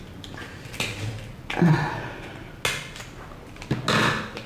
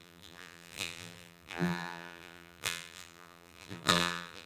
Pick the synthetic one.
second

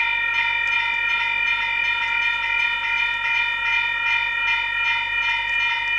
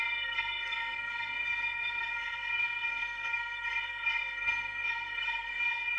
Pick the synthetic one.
second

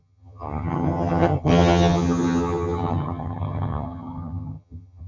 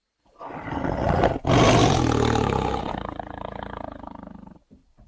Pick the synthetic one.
first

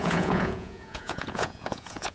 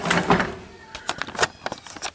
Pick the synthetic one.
first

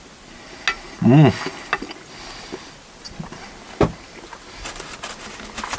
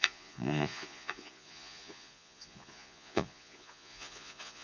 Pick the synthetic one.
second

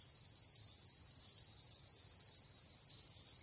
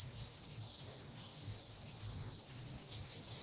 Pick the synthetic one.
second